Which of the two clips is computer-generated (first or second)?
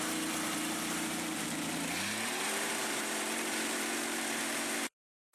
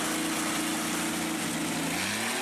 first